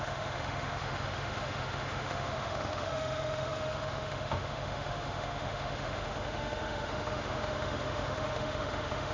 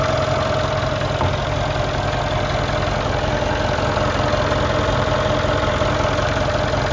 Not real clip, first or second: first